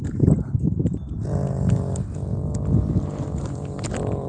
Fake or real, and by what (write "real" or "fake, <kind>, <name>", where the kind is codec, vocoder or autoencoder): real